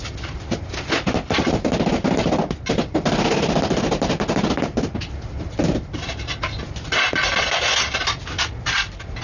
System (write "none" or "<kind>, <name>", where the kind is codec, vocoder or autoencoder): none